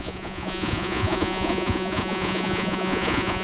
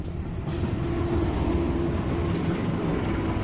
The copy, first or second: first